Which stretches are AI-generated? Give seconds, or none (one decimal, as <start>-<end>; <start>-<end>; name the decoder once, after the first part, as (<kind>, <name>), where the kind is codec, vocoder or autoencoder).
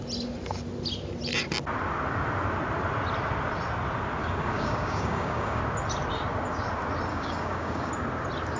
4.2-5.6 (codec, DAC); 7.1-7.9